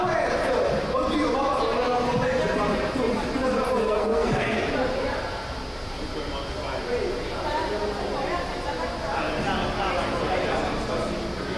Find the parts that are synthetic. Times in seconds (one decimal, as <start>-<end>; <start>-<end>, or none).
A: 3.8-4.7